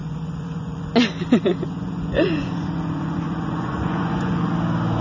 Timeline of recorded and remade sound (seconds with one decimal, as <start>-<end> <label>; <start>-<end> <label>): 0.0-0.9 remade; 0.9-1.5 recorded; 1.5-4.5 remade; 4.5-5.0 recorded